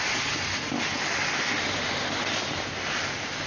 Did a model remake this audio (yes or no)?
no